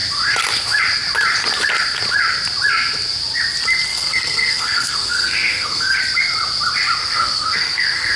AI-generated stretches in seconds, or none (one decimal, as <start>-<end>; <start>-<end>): 3.9-6.0; 7.0-8.2